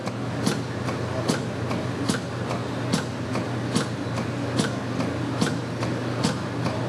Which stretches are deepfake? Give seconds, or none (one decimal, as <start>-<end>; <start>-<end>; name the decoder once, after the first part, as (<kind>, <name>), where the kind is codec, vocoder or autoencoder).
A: none